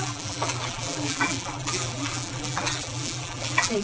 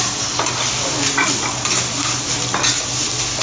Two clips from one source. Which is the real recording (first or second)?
second